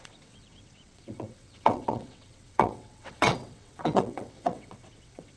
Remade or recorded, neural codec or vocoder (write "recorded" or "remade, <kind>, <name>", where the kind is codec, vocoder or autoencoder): remade, vocoder, WaveNeXt